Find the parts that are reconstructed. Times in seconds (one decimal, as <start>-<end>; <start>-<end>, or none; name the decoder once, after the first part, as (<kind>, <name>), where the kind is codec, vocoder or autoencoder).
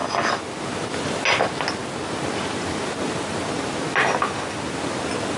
none